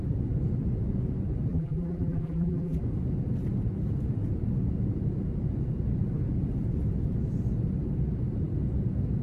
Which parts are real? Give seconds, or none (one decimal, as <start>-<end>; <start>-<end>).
0.0-1.5; 2.8-9.2